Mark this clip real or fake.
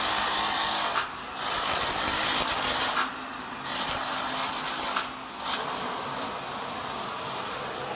real